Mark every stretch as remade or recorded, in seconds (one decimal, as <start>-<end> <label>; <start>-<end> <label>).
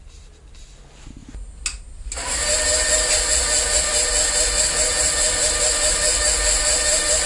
0.0-7.3 recorded